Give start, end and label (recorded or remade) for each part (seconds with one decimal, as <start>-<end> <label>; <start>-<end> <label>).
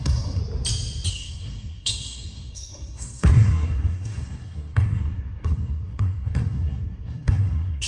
0.0-0.4 remade; 0.4-1.1 recorded; 1.1-7.9 remade